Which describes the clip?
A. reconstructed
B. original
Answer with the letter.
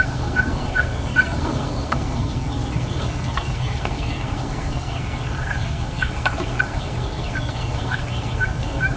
A